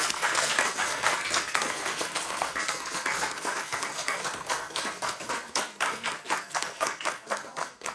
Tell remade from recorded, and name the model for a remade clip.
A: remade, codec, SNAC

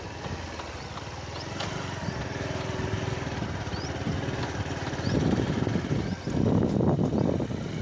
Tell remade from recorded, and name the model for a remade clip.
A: recorded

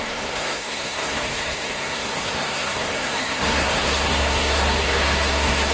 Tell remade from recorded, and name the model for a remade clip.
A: remade, codec, SNAC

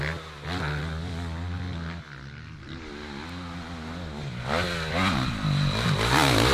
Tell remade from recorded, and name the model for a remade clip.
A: recorded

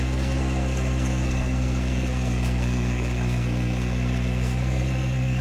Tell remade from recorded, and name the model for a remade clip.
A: remade, codec, SNAC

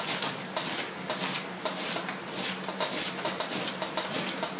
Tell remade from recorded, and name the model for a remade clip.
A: recorded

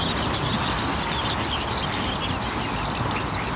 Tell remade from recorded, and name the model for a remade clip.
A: recorded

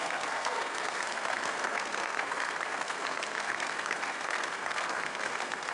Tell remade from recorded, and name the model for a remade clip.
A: remade, codec, SNAC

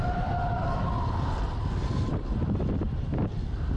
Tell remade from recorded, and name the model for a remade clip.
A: recorded